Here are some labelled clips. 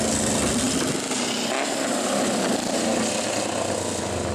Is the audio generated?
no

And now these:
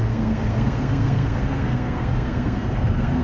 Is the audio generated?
yes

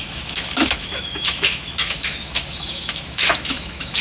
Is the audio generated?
yes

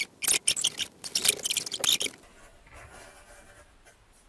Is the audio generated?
no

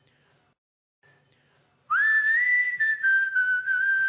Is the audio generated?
no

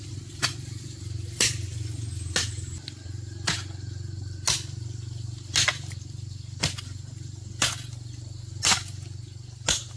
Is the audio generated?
no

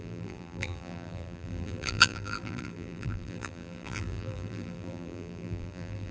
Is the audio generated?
yes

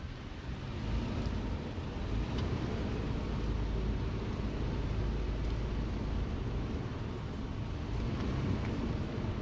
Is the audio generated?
no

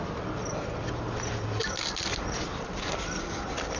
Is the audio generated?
no